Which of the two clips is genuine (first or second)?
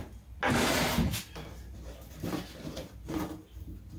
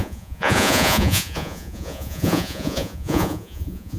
first